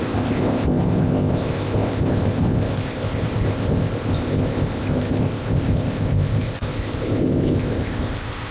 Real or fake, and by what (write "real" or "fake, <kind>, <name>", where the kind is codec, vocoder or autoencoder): fake, codec, ZipCodec